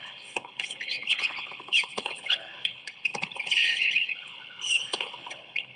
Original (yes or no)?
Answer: no